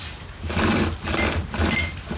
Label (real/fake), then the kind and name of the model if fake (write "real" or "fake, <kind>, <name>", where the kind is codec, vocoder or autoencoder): real